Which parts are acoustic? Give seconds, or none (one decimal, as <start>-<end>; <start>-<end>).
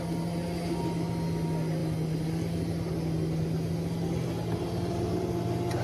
0.0-5.8